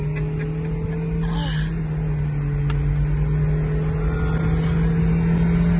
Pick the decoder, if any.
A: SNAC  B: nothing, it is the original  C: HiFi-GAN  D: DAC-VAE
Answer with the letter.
B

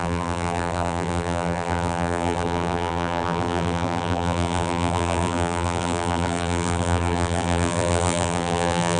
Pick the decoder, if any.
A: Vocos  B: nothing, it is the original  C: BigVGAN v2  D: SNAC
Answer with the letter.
C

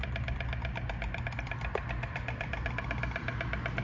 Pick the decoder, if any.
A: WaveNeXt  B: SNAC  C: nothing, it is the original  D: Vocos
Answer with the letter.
C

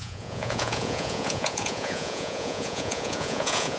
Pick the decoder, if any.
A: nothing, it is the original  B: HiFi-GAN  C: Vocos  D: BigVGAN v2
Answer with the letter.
C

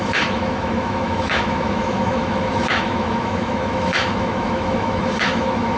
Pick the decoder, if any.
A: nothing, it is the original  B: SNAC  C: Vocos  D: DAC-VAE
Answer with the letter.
D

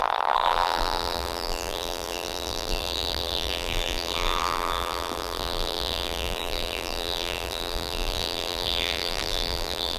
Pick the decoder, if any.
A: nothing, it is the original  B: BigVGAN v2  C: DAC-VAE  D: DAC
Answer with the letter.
B